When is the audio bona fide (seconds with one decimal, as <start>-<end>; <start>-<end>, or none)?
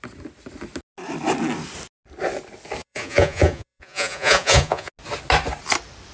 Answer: 0.0-2.8; 4.9-6.1